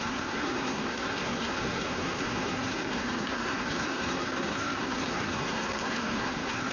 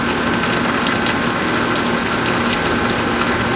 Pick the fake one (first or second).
first